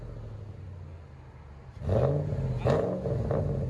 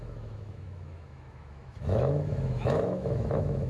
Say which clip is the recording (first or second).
first